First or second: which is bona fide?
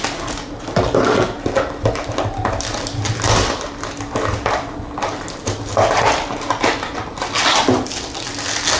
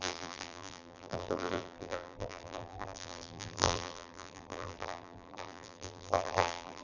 first